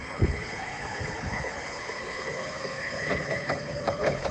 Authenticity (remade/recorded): remade